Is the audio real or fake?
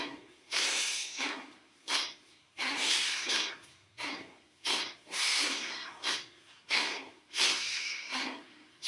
fake